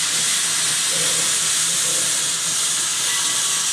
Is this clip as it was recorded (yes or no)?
yes